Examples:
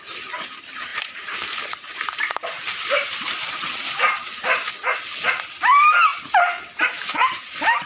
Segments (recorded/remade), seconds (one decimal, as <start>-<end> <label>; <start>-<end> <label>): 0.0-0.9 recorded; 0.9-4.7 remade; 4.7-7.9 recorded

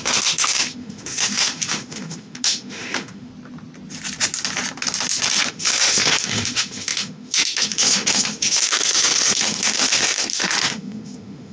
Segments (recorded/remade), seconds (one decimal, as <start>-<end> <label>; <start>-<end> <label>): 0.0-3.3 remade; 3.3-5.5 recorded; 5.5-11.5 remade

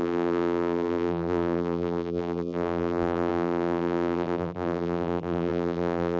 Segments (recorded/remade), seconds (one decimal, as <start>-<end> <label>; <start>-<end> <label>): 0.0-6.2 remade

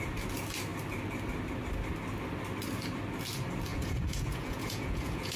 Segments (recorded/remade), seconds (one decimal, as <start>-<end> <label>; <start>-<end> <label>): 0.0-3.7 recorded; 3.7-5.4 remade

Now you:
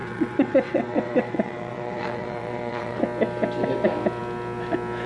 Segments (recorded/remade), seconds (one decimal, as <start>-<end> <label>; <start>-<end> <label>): 0.0-3.0 remade; 3.0-5.1 recorded